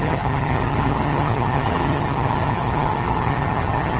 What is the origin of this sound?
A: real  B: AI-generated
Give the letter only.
B